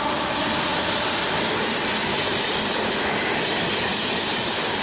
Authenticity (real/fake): fake